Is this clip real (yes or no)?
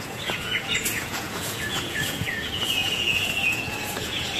no